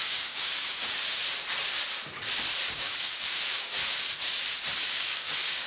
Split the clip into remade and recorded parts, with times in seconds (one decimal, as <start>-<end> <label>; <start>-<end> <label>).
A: 0.0-1.2 remade; 1.2-2.7 recorded; 2.7-3.8 remade; 3.8-4.8 recorded; 4.8-5.7 remade